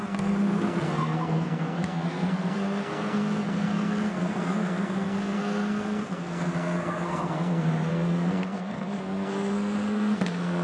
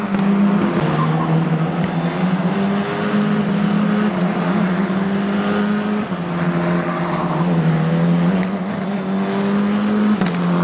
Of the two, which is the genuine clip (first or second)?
second